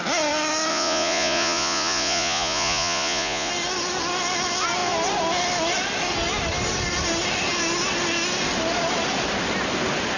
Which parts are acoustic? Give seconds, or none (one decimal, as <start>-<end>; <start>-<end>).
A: 0.0-0.7; 3.5-10.2